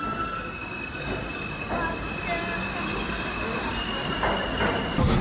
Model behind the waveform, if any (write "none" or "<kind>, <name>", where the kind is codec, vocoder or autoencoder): none